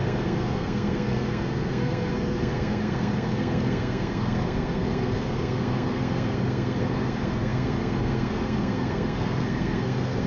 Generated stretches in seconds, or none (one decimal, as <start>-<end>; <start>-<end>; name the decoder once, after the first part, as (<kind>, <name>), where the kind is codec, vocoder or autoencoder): 0.0-10.3 (codec, SNAC)